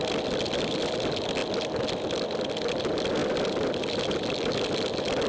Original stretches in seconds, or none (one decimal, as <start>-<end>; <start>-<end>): 0.0-5.3